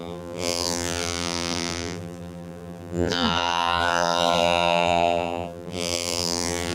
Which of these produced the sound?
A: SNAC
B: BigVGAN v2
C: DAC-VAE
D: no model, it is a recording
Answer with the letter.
B